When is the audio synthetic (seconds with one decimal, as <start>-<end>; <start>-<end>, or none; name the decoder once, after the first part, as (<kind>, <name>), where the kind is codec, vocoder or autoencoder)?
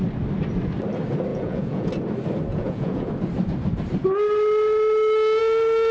1.3-1.9 (vocoder, Vocos); 2.5-3.1